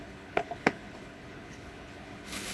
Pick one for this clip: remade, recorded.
remade